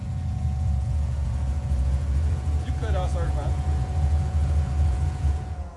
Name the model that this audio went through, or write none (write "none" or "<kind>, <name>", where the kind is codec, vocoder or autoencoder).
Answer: vocoder, Vocos